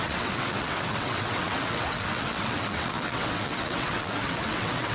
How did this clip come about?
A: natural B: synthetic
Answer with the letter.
B